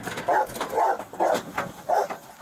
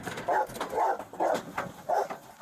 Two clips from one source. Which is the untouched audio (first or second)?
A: first